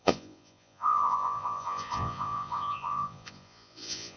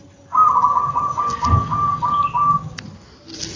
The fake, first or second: first